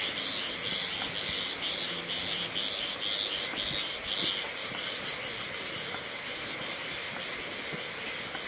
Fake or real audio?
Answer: real